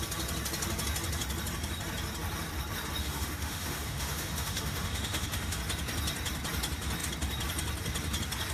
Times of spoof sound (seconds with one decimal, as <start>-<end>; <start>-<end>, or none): 3.0-5.6